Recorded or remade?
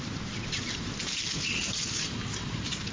remade